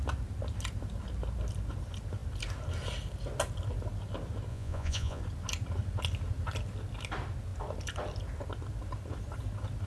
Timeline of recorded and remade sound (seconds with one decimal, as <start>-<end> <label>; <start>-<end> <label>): 0.0-4.5 recorded; 4.5-5.2 remade; 5.2-9.9 recorded